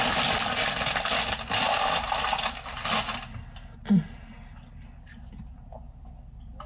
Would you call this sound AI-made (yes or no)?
no